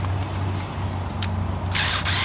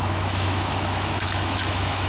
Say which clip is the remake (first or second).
second